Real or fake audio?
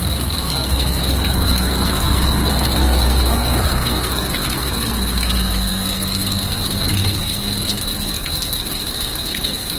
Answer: fake